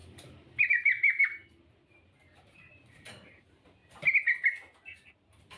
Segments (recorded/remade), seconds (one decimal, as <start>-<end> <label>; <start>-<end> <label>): 0.0-1.2 recorded; 1.2-3.8 remade; 3.8-5.6 recorded